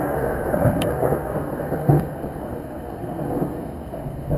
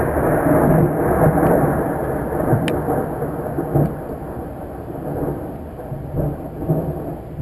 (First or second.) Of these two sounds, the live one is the second